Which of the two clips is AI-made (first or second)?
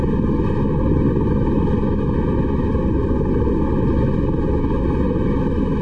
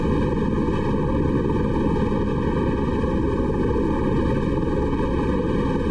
first